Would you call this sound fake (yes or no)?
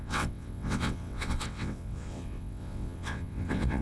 yes